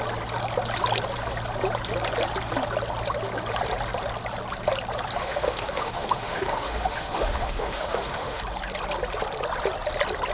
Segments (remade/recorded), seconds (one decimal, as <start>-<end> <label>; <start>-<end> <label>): 0.0-5.2 recorded; 5.2-8.4 remade; 8.4-10.3 recorded